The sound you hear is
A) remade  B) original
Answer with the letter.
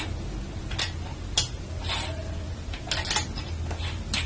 B